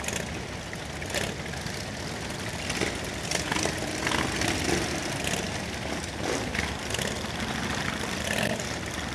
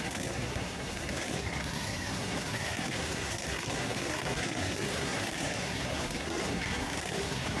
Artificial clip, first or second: second